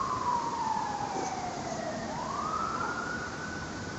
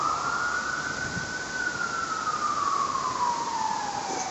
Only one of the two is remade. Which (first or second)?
first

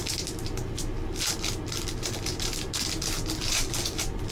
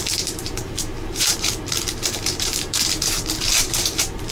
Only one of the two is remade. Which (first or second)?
second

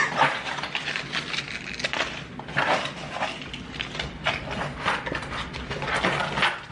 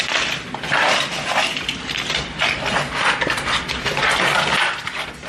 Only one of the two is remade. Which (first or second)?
second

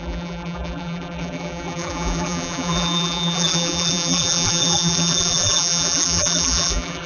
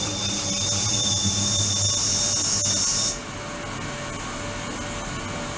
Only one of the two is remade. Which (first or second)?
first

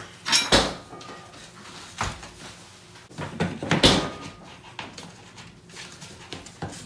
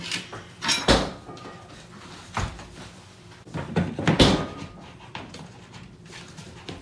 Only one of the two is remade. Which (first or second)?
second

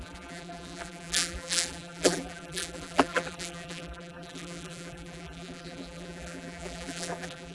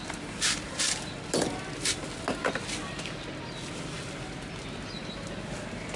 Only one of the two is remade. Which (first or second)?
first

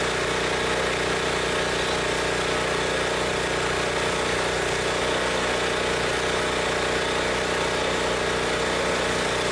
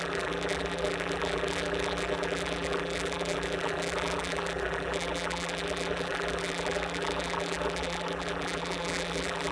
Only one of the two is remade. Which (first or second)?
second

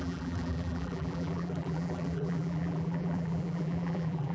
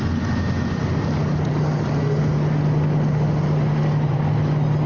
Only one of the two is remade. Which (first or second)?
first